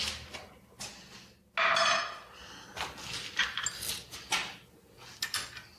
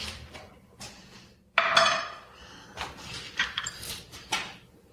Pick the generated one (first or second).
second